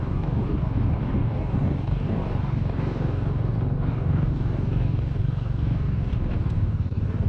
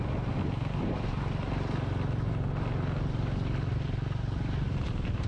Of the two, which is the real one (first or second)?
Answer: second